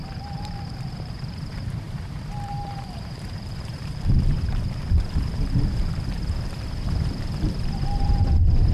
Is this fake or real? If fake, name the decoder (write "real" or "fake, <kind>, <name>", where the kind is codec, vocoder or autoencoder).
fake, vocoder, BigVGAN v2